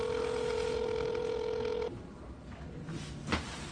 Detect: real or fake real